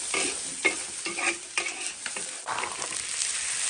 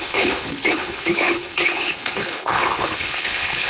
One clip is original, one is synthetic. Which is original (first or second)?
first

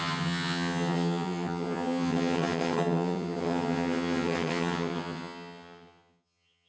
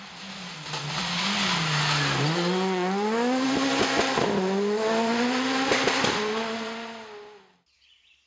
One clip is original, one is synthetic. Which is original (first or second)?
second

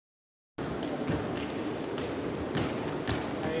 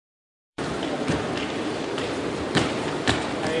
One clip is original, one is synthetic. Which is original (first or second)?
first